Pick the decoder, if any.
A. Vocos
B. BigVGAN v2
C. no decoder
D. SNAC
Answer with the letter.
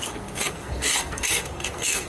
D